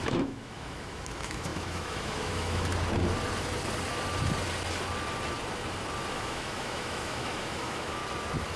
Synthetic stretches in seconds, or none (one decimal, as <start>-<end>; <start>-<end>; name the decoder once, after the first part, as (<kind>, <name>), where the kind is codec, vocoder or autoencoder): 0.0-2.7 (autoencoder, DAC-VAE); 6.1-8.0